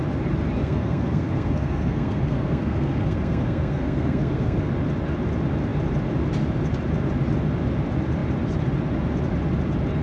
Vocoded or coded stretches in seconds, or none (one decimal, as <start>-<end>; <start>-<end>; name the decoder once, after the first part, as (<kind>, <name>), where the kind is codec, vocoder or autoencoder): 0.6-4.7 (codec, SNAC)